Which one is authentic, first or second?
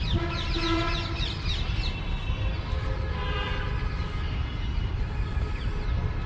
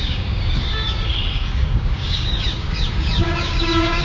first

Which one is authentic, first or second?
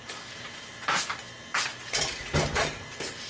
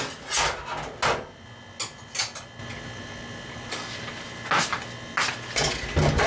second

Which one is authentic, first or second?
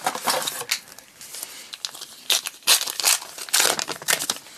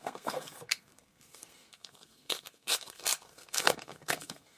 first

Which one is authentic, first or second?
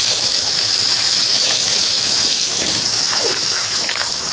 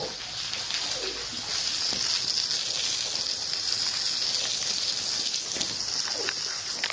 second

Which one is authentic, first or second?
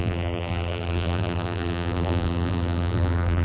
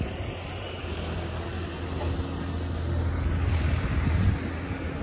second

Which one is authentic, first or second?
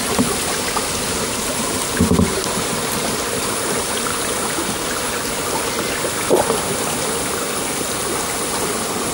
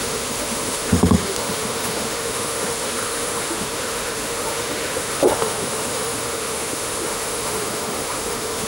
first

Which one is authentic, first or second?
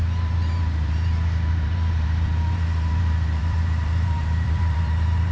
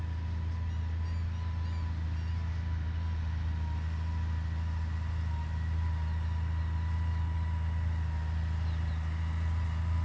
second